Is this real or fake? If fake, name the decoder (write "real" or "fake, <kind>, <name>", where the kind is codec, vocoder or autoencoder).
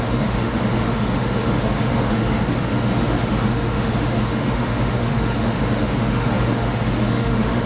fake, autoencoder, DAC-VAE